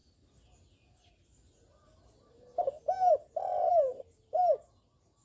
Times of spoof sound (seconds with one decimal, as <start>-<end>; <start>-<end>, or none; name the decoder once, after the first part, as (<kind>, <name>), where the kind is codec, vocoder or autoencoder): 3.7-4.4 (vocoder, BigVGAN v2)